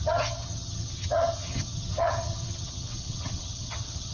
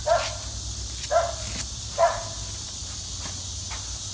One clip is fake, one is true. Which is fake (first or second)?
first